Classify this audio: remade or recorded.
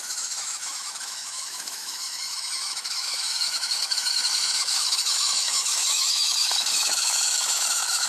remade